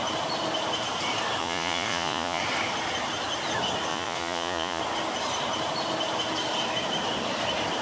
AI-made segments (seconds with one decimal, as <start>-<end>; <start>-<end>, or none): 1.4-2.4; 3.9-4.8